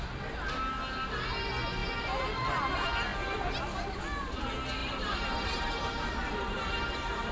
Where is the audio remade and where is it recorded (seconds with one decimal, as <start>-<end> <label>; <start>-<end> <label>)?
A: 0.0-4.8 recorded; 4.8-6.7 remade; 6.7-7.3 recorded